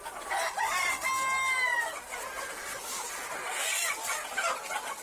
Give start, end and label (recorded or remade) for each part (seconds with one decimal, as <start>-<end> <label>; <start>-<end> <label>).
0.0-5.0 recorded